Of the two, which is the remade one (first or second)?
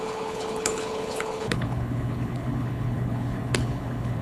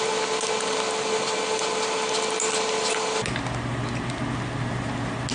first